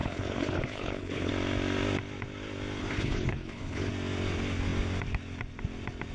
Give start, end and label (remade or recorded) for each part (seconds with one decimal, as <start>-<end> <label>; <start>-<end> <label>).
0.0-1.3 remade; 1.3-2.8 recorded; 2.8-3.9 remade; 3.9-6.1 recorded